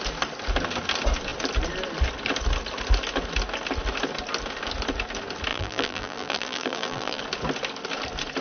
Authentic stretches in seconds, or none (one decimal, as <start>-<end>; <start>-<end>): 0.0-5.5; 7.2-8.4